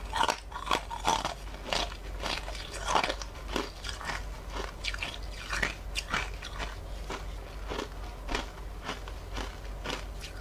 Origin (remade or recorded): recorded